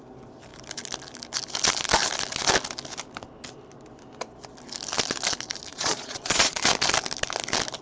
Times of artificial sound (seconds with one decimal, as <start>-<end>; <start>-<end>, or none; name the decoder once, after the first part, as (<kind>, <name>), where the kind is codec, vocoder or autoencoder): 5.7-6.6 (vocoder, Vocos)